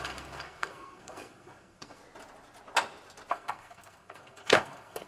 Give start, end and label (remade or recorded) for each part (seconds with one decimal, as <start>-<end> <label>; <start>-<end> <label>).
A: 0.0-2.0 remade; 2.0-3.3 recorded; 3.3-5.1 remade